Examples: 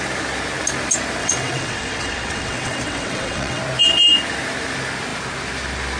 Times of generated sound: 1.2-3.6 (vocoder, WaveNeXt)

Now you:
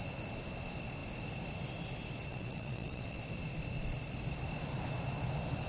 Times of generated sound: 2.3-3.2 (vocoder, WaveNeXt)

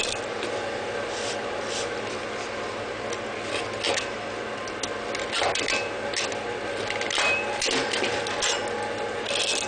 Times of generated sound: none

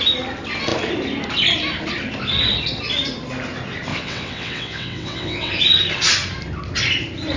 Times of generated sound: 3.9-5.5 (vocoder, WaveNeXt)

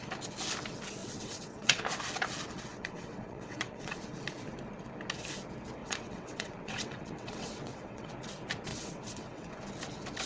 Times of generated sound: 1.0-1.8 (vocoder, WaveNeXt); 2.7-4.0; 5.8-8.1; 8.7-9.5

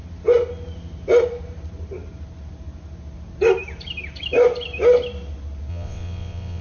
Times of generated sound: 5.7-6.6 (vocoder, WaveNeXt)